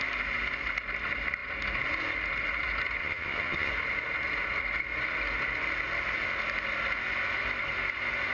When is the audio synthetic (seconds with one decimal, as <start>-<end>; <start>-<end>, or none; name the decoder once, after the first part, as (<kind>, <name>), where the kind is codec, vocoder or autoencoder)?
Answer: 3.0-3.7 (vocoder, HiFi-GAN)